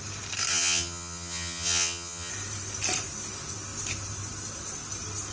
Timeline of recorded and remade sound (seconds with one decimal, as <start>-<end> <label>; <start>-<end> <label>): 0.0-0.5 recorded; 0.5-2.3 remade; 2.3-5.3 recorded